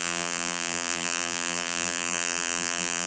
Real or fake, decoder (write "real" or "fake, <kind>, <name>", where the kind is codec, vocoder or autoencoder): fake, vocoder, BigVGAN v2